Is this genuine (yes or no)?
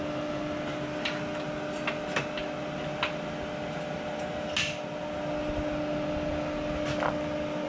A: yes